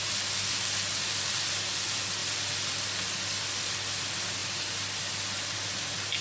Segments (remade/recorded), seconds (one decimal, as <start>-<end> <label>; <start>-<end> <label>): 0.0-6.2 recorded